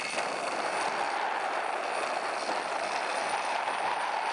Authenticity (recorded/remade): recorded